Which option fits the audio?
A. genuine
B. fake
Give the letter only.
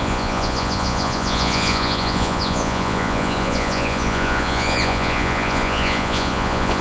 B